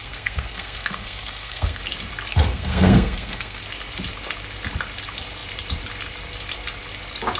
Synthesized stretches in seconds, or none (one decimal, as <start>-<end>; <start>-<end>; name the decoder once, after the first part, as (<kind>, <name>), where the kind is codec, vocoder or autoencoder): 0.0-1.8 (codec, SNAC); 2.3-3.6

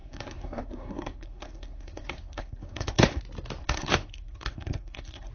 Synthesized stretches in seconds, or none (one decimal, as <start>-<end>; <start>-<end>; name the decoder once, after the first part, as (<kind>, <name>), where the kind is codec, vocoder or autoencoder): 0.0-3.2 (codec, SNAC); 3.6-5.3

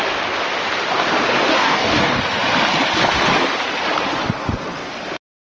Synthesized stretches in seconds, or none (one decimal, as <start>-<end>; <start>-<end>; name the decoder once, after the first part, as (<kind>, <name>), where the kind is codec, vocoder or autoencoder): 1.5-2.2 (codec, DAC)

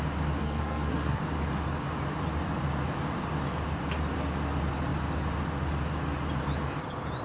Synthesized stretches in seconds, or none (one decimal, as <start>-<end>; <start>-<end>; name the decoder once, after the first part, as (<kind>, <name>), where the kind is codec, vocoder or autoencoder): 0.4-1.2 (codec, SNAC)

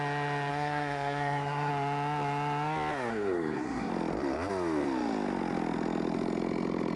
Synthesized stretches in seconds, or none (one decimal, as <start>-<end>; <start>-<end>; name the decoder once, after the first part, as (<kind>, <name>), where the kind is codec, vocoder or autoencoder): 0.5-1.7 (codec, SNAC); 3.1-3.9

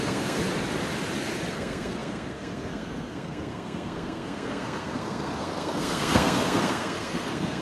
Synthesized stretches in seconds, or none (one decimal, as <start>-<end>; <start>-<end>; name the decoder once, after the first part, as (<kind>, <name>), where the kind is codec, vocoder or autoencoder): 0.0-0.4 (codec, SNAC); 1.5-7.6

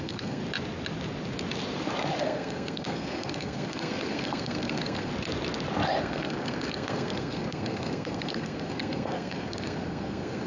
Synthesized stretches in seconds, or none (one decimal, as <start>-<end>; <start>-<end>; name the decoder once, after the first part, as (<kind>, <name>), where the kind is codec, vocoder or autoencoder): 0.0-0.4 (codec, SNAC); 2.2-5.1; 6.0-10.5

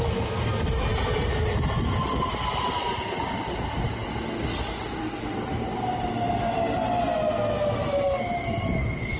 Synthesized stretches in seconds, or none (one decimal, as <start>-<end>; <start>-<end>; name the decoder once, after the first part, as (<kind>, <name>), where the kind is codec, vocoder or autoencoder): none